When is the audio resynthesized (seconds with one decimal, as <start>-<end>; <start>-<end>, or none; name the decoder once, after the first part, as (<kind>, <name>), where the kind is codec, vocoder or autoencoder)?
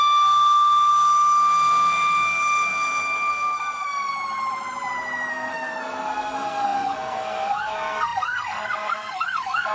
0.0-4.1 (codec, SNAC); 5.3-9.7